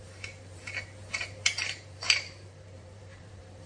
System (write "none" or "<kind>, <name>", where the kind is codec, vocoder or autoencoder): vocoder, BigVGAN v2